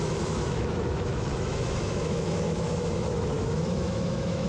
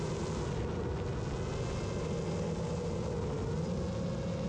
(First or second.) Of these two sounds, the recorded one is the second